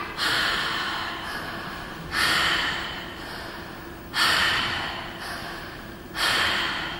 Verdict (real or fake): fake